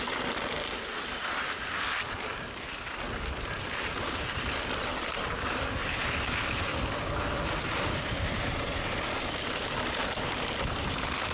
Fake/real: real